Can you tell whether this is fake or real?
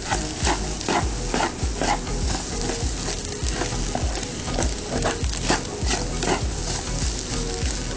real